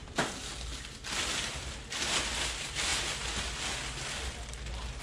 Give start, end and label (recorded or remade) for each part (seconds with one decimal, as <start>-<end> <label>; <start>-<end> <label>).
0.0-5.0 recorded